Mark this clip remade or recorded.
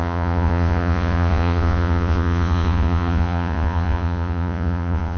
remade